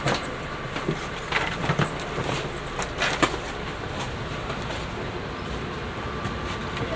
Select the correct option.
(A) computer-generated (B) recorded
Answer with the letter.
A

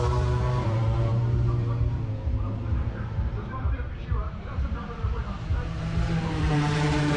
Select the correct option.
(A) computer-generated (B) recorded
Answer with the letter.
A